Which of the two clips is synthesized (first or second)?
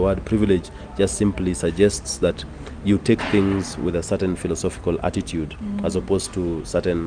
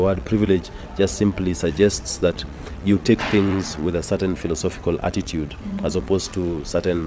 second